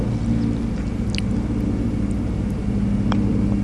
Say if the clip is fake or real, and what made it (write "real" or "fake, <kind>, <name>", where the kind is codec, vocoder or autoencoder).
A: real